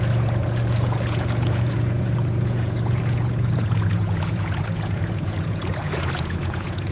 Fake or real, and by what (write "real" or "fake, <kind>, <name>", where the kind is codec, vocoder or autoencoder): fake, vocoder, Vocos